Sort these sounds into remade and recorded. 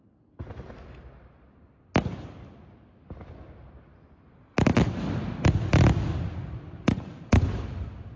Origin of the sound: recorded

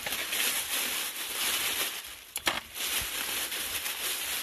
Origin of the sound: remade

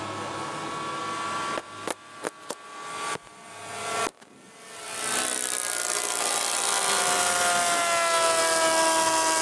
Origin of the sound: recorded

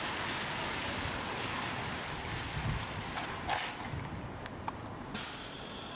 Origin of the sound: recorded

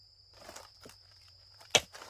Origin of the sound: recorded